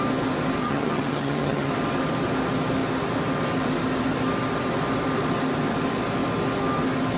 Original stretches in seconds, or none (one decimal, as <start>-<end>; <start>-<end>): 0.0-0.6; 1.7-7.2